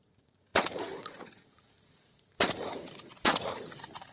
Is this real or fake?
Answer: fake